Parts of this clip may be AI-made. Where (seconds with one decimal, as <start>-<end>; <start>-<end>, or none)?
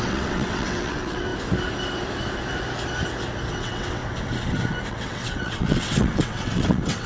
0.0-1.3; 3.5-4.0; 4.9-7.1